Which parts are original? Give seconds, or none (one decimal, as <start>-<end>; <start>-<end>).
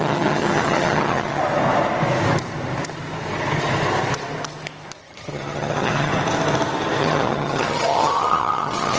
1.4-5.0; 6.1-7.0